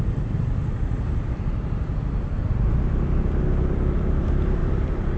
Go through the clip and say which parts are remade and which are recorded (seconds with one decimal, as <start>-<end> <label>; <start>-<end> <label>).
0.0-5.2 remade